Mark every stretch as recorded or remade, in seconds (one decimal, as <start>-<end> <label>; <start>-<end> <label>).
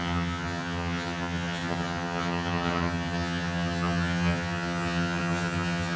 0.0-6.0 remade